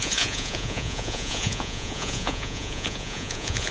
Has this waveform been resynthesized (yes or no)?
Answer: yes